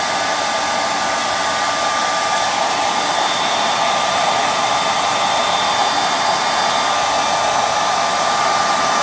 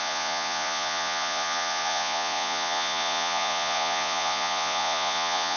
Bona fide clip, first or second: first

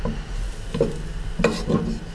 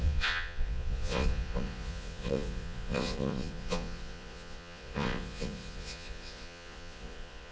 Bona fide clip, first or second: first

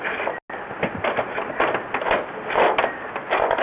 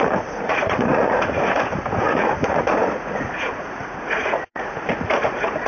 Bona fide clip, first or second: first